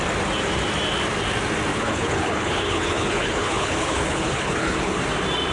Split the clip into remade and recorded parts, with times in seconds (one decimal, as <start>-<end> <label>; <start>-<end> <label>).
0.0-1.7 recorded; 1.7-5.0 remade; 5.0-5.5 recorded